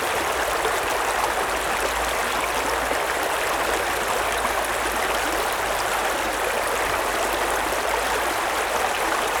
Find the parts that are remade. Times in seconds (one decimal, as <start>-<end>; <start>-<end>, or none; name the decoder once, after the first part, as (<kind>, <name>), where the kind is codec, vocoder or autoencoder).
none